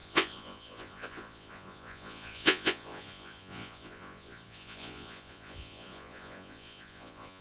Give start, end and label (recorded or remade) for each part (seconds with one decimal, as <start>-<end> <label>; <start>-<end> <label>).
0.0-7.4 remade